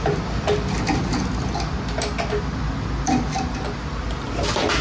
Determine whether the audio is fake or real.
real